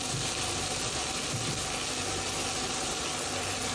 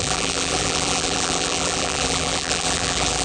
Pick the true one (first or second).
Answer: first